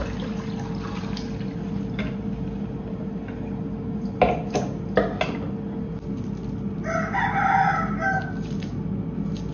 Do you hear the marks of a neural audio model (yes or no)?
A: no